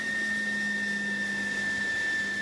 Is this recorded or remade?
recorded